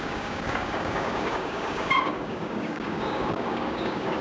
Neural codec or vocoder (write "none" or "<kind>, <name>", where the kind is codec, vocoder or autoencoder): codec, DAC